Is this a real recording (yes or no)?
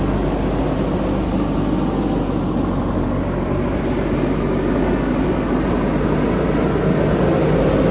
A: yes